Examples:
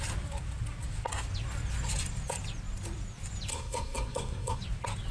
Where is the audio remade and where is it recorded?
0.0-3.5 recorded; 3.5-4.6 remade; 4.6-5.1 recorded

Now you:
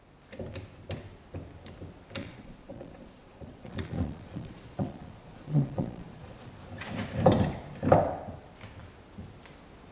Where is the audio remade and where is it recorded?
0.0-2.2 recorded; 2.2-6.5 remade; 6.5-9.9 recorded

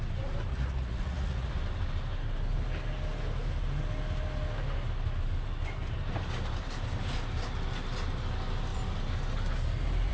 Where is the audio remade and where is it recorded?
0.0-0.5 recorded; 0.5-1.5 remade; 1.5-10.1 recorded